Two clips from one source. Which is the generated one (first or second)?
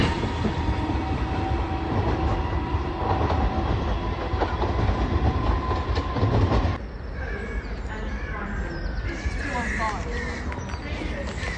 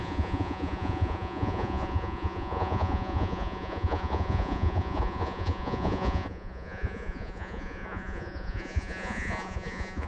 second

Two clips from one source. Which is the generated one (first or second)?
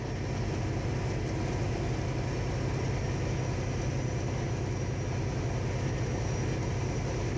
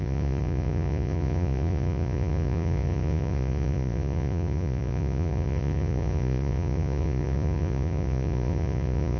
second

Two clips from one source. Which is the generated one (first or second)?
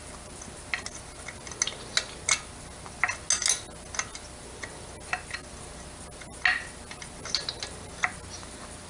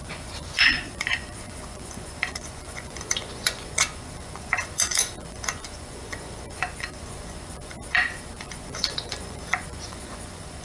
second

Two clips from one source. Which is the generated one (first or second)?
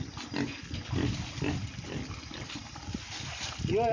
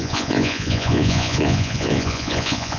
second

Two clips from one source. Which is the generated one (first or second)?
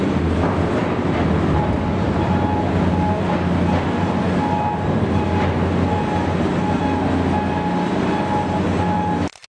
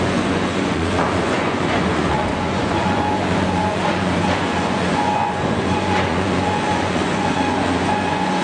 second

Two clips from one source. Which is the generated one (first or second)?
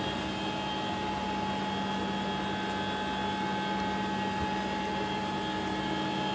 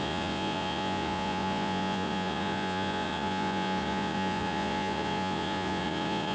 second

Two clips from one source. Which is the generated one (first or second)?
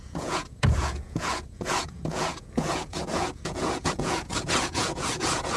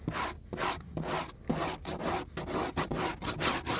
first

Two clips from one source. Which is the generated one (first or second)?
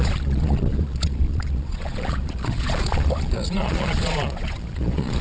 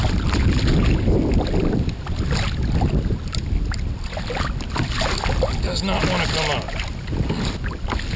first